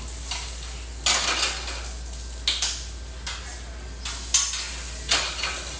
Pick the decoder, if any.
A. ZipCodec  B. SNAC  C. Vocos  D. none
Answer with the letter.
D